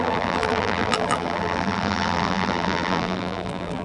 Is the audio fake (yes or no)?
yes